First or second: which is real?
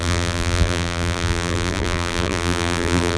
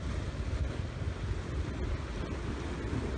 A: second